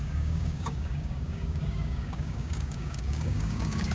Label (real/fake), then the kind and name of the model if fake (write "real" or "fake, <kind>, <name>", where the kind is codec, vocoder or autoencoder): fake, codec, DAC